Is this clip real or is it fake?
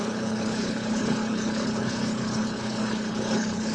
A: fake